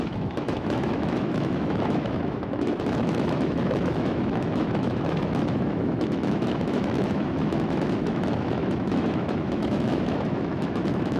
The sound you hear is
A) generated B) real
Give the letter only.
A